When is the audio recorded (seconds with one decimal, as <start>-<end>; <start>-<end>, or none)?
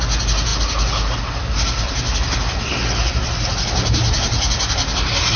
0.0-5.4